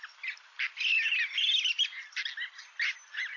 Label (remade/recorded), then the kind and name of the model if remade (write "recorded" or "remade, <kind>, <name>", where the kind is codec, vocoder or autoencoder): recorded